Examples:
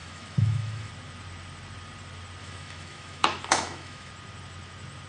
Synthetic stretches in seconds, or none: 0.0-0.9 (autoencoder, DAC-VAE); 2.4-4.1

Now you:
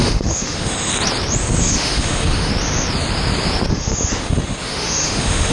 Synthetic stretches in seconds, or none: 0.0-0.9 (autoencoder, DAC-VAE); 1.6-2.5; 3.7-5.5

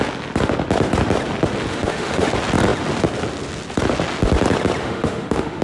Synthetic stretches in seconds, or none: 1.7-2.3 (autoencoder, DAC-VAE); 4.8-5.6

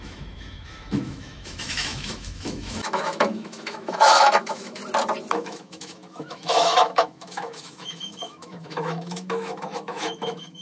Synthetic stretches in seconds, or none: 0.0-4.8 (autoencoder, DAC-VAE); 5.3-10.6